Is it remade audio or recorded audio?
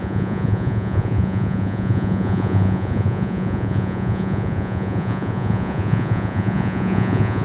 remade